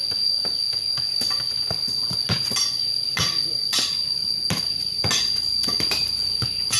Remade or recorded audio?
recorded